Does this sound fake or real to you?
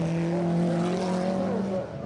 real